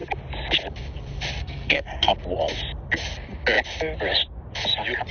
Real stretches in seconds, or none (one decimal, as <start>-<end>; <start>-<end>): 0.0-1.4; 2.1-5.1